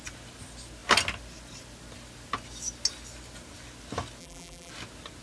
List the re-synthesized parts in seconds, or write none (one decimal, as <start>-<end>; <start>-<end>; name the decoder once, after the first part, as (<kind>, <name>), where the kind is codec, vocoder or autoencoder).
4.2-4.7 (vocoder, BigVGAN v2)